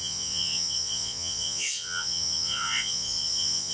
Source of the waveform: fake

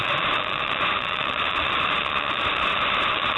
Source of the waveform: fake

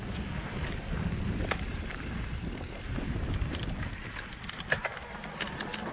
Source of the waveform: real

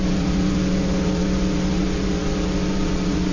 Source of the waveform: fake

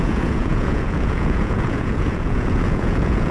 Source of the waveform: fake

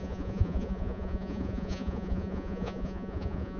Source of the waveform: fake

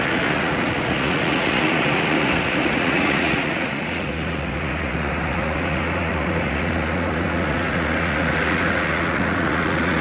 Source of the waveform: fake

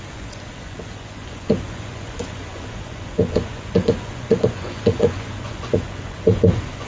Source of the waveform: fake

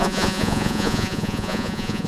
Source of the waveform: fake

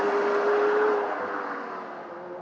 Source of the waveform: real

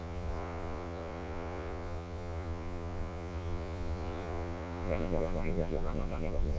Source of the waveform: fake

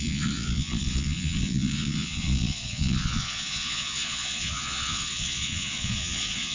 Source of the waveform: fake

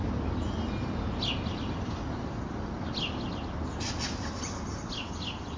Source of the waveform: real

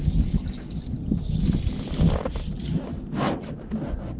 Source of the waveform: real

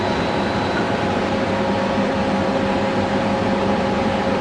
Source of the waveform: real